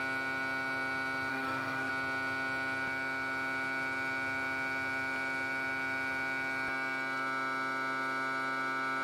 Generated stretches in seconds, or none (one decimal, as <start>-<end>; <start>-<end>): 1.3-1.9